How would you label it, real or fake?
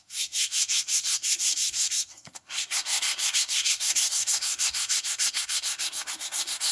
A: fake